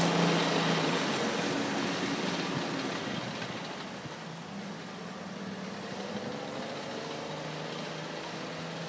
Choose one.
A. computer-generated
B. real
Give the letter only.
B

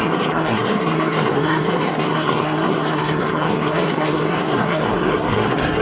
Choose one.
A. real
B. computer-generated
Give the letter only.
B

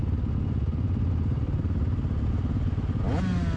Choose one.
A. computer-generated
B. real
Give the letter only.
B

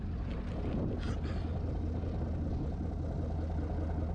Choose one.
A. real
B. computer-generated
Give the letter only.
A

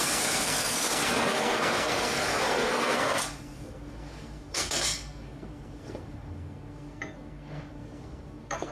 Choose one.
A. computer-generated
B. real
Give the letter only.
A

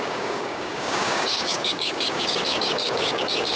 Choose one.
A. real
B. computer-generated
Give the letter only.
B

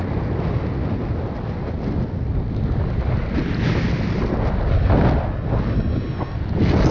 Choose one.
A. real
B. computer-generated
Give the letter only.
A